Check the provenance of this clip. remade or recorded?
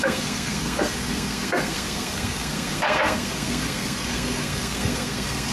remade